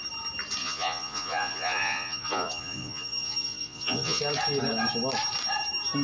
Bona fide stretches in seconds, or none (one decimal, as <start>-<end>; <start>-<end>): 0.0-0.6; 4.2-6.0